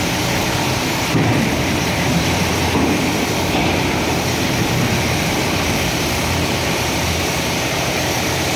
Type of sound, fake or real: fake